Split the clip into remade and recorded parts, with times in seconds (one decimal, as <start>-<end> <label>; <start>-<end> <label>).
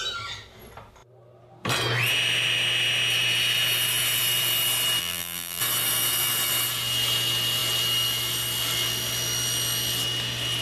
0.0-5.0 recorded; 5.0-5.6 remade; 5.6-10.6 recorded